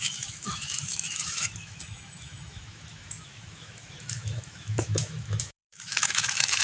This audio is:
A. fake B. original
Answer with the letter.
A